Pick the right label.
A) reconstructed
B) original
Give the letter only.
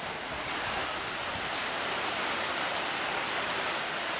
A